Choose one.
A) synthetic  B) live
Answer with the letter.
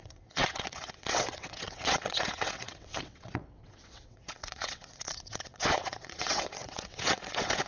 A